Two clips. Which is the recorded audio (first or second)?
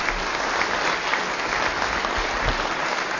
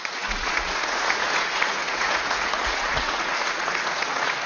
first